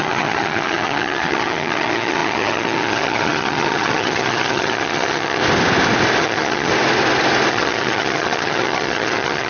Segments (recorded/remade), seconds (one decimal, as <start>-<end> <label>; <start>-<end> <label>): 0.0-5.4 remade; 5.4-6.2 recorded; 6.2-6.7 remade; 6.7-7.5 recorded; 7.5-9.5 remade

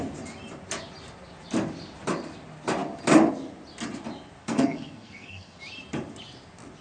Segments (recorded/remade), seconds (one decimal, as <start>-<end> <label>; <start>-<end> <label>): 0.0-4.4 recorded; 4.4-5.6 remade; 5.6-6.8 recorded

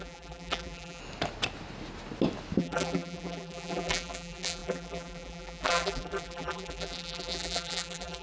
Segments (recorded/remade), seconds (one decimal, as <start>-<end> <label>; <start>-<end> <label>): 0.0-1.0 remade; 1.0-2.6 recorded; 2.6-8.2 remade

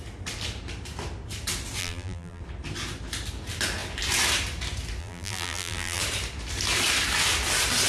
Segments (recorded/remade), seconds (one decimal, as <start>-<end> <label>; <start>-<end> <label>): 0.0-1.8 recorded; 1.8-2.4 remade; 2.4-5.0 recorded; 5.0-6.0 remade; 6.0-7.9 recorded

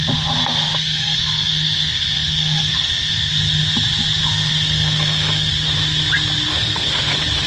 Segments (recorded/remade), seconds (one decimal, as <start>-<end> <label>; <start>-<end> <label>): 0.0-0.4 recorded; 0.4-3.3 remade; 3.3-4.2 recorded; 4.2-5.5 remade; 5.5-6.5 recorded; 6.5-7.1 remade; 7.1-7.5 recorded

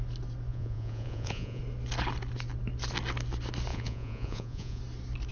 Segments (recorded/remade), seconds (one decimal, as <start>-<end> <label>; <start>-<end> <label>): 0.0-0.5 recorded; 0.5-1.6 remade; 1.6-3.7 recorded; 3.7-4.8 remade; 4.8-5.3 recorded

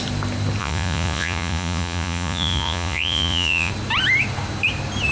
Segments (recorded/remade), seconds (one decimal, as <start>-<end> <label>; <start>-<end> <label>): 0.0-0.6 recorded; 0.6-3.7 remade; 3.7-5.1 recorded